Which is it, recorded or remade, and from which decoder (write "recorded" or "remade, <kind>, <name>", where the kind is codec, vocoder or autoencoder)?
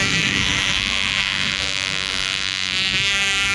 remade, codec, SNAC